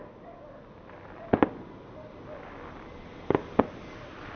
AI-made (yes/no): no